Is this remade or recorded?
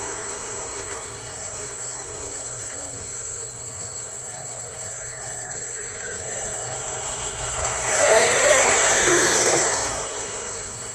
remade